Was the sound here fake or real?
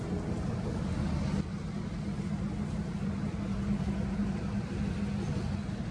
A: real